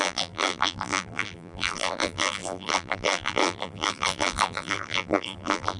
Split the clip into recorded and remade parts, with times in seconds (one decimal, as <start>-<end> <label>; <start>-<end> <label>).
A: 0.0-5.8 remade